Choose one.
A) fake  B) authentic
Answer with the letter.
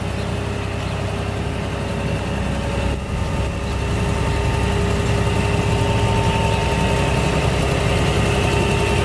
B